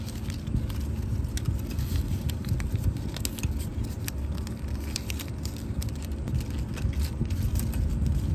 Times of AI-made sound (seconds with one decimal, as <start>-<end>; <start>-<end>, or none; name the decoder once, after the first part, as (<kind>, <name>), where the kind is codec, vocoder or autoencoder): none